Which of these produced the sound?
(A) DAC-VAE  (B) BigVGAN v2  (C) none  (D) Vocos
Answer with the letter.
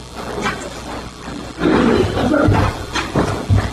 C